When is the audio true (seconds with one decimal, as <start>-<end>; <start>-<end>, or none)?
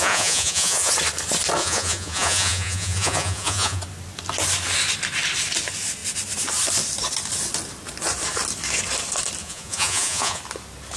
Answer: 0.9-1.6; 3.8-9.4; 10.4-11.0